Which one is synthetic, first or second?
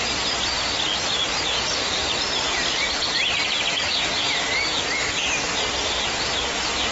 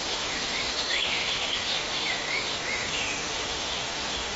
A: second